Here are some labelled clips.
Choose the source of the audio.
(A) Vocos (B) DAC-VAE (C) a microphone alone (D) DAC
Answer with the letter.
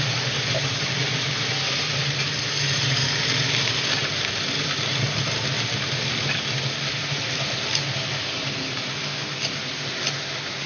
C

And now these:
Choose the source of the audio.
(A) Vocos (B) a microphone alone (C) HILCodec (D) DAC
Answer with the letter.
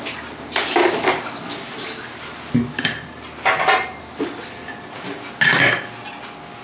B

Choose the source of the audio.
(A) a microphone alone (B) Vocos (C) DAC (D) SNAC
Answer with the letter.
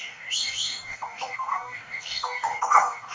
C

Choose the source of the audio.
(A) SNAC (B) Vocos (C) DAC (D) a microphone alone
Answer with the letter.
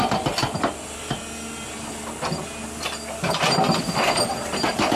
D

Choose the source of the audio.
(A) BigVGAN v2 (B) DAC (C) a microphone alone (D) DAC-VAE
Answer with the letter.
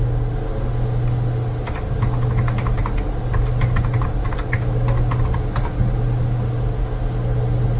C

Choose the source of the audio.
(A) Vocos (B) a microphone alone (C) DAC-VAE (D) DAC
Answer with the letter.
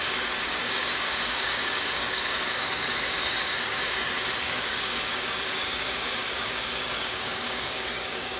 D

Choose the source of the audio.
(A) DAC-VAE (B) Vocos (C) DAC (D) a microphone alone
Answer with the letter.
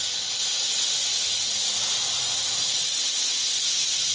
D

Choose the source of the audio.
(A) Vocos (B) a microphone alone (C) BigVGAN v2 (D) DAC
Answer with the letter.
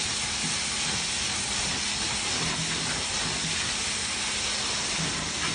B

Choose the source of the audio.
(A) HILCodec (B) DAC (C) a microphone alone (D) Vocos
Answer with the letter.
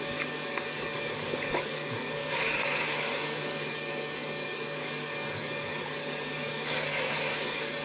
B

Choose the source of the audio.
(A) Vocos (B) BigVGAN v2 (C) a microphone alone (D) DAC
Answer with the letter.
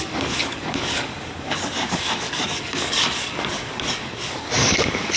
D